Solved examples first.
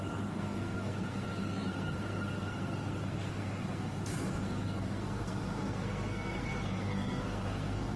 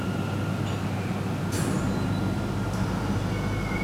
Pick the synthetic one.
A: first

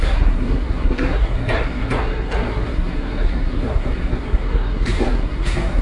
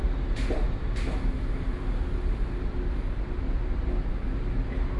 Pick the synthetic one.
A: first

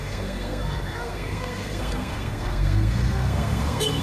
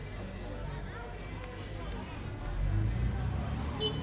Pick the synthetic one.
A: first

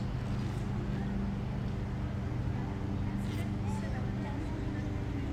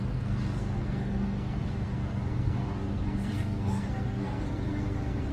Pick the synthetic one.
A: second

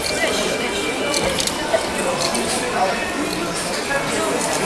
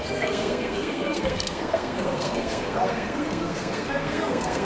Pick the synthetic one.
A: second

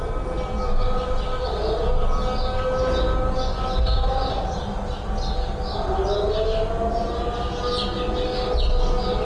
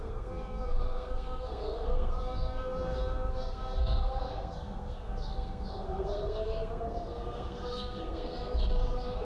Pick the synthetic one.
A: second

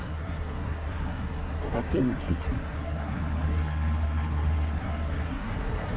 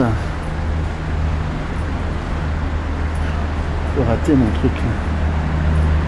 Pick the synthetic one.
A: first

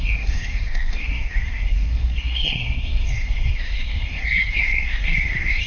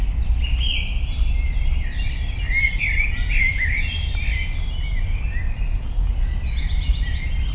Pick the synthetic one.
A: first